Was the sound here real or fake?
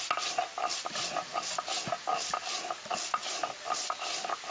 real